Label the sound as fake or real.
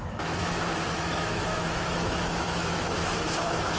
fake